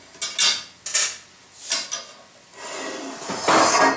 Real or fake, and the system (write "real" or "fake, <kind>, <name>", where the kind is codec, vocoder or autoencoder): real